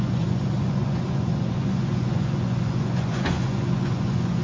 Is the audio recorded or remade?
remade